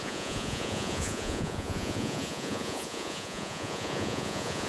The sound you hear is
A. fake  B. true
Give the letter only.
A